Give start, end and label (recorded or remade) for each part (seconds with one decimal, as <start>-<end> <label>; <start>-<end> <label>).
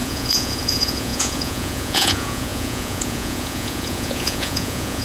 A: 0.0-5.0 remade